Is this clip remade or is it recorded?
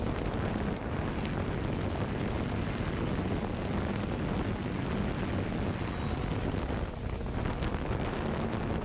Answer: recorded